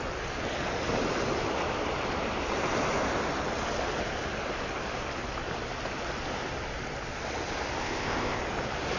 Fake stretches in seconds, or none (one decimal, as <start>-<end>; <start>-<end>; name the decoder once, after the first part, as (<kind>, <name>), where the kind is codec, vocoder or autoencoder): 7.8-8.4 (codec, ZipCodec)